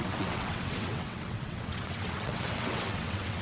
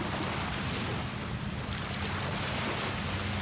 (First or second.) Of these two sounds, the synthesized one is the first